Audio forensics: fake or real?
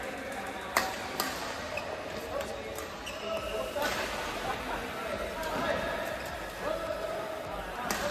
real